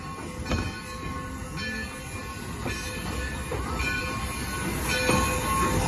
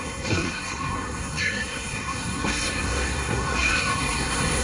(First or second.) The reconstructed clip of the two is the second